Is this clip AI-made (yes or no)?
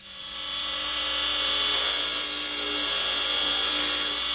no